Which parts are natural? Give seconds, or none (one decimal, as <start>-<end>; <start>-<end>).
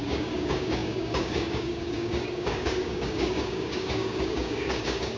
none